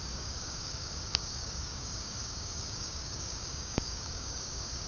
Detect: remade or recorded remade